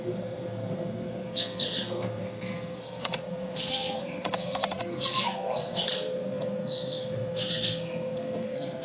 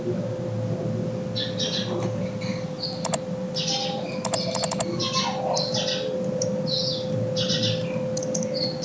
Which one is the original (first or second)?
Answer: second